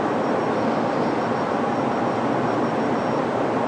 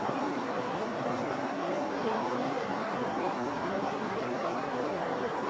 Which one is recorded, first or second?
first